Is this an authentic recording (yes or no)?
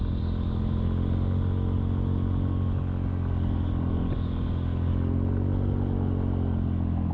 yes